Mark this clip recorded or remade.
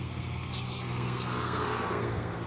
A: remade